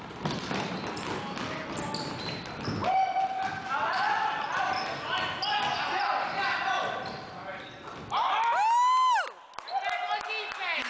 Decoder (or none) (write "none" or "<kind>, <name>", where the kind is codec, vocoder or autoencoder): none